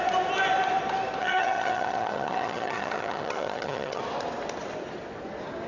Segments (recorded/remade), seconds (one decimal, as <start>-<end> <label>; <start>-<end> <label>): 0.0-1.2 recorded; 1.2-4.0 remade; 4.0-5.7 recorded